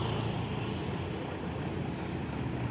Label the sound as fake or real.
real